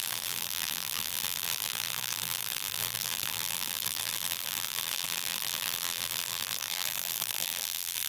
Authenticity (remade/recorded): remade